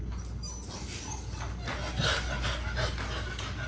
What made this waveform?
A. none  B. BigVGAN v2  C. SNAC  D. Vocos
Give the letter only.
A